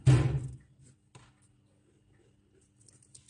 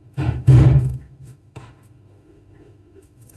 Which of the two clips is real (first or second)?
first